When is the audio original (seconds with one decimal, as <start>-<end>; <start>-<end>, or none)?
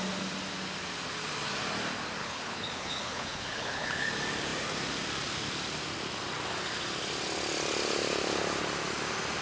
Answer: 0.0-2.2; 4.1-9.4